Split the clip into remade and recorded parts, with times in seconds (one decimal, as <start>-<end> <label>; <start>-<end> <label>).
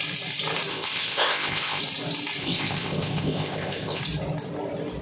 0.0-0.7 recorded; 0.7-1.8 remade; 1.8-2.4 recorded; 2.4-4.0 remade; 4.0-5.0 recorded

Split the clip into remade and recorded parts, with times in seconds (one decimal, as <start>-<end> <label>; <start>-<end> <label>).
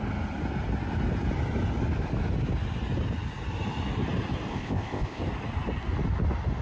0.0-4.5 recorded; 4.5-5.2 remade; 5.2-6.6 recorded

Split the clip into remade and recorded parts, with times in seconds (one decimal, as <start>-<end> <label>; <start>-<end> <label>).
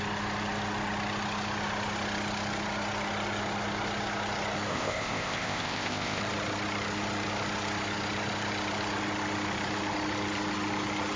0.0-4.7 recorded; 4.7-6.2 remade; 6.2-11.2 recorded